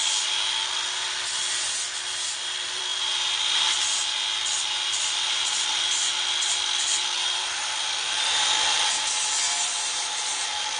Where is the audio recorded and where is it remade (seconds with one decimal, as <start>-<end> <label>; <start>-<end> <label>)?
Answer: 0.0-2.2 recorded; 2.2-4.0 remade; 4.0-5.0 recorded; 5.0-10.8 remade